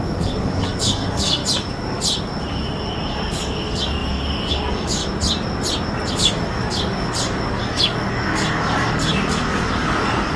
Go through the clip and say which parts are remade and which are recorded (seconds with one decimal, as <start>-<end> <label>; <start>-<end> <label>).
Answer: 0.0-1.4 remade; 1.4-3.1 recorded; 3.1-5.0 remade; 5.0-6.1 recorded; 6.1-10.4 remade